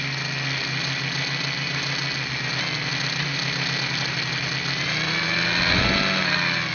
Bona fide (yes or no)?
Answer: yes